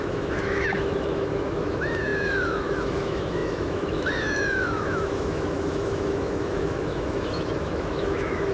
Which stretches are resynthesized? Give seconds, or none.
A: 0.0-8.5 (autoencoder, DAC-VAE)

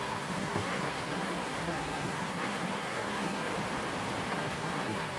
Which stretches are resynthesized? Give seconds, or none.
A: 0.0-3.5 (codec, SNAC); 4.3-5.2

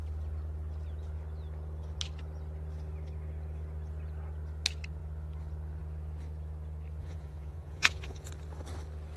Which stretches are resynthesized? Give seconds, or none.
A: 7.0-8.3 (vocoder, Vocos)

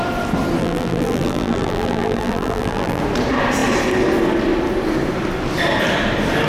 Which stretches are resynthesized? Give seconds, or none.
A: 0.6-3.0 (vocoder, BigVGAN v2)